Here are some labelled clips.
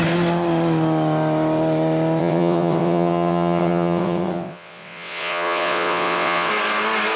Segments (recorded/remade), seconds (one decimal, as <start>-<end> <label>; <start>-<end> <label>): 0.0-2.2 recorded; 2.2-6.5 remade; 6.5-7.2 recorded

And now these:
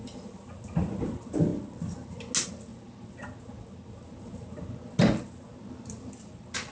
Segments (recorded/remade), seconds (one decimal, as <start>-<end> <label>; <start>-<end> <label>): 0.0-6.7 recorded

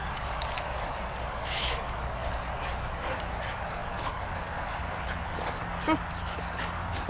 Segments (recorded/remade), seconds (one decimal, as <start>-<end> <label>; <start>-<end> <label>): 0.0-7.1 remade

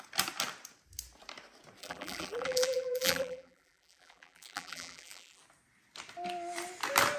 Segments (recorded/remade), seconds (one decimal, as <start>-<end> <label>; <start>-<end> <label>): 0.0-1.8 recorded; 1.8-5.4 remade; 5.4-7.2 recorded

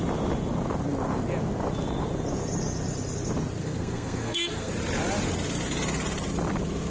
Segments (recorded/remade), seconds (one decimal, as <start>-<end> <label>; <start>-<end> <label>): 0.0-3.6 recorded; 3.6-4.7 remade; 4.7-6.9 recorded

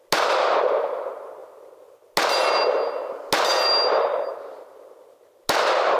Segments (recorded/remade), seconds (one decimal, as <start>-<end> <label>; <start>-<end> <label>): 0.0-6.0 recorded